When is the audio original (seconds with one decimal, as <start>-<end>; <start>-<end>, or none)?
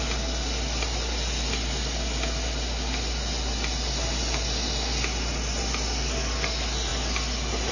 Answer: 0.0-7.7